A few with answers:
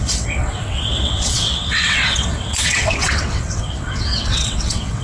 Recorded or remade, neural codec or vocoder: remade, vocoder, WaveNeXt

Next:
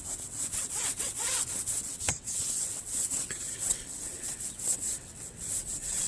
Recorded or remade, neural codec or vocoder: remade, vocoder, WaveNeXt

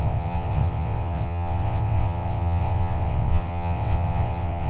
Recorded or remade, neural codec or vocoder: remade, vocoder, WaveNeXt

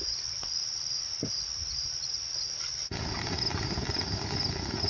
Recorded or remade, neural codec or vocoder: recorded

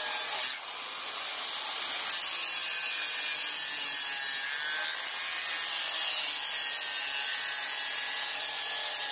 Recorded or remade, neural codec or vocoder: recorded